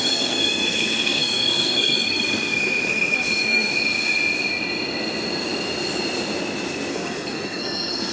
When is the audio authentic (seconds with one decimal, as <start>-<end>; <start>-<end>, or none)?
3.7-6.9